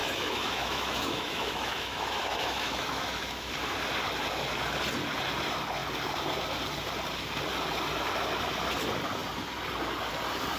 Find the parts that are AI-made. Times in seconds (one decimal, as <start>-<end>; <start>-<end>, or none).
0.0-3.5